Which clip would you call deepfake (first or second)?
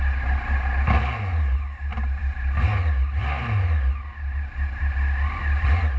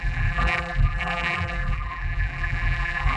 second